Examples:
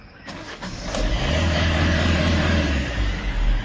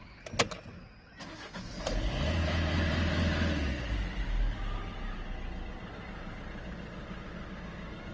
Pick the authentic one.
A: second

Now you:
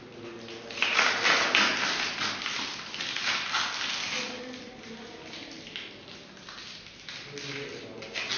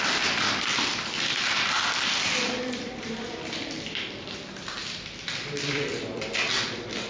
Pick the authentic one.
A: first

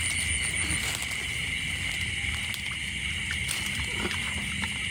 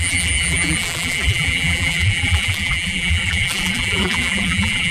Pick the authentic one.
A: first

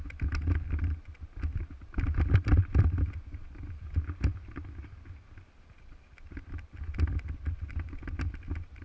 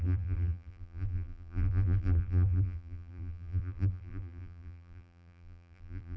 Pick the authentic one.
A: first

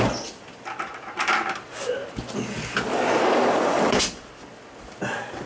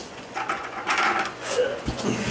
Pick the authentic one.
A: first